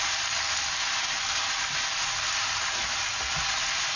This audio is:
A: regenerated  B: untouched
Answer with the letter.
B